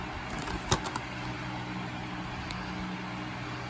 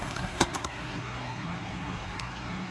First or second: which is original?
first